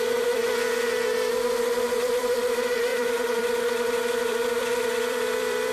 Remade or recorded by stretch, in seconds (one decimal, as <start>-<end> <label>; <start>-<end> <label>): 0.0-0.4 remade; 0.4-2.0 recorded; 2.0-5.7 remade